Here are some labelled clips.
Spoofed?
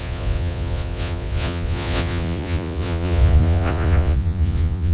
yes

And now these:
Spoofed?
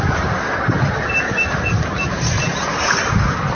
no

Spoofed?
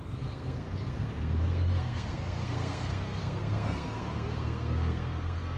yes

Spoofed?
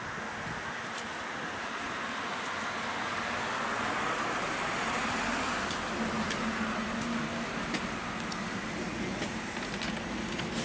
no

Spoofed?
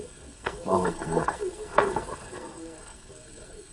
yes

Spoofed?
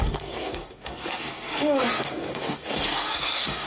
yes